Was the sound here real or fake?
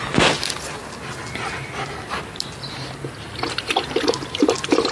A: real